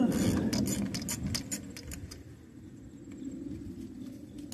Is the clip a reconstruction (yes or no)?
no